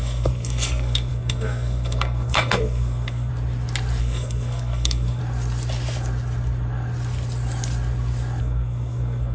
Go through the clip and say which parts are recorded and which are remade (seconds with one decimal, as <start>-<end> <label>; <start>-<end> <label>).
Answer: 0.0-3.3 remade; 3.3-4.0 recorded; 4.0-5.2 remade; 5.2-8.4 recorded; 8.4-9.3 remade